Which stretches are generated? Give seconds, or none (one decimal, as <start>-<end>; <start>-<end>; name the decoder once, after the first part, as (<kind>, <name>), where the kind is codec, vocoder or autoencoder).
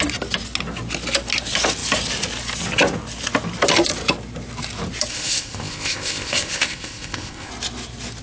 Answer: 5.1-7.5 (codec, ZipCodec)